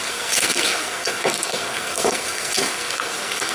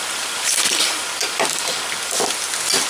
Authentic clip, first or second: second